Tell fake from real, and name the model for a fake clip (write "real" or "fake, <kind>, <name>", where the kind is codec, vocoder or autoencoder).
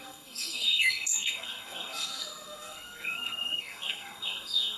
fake, codec, SNAC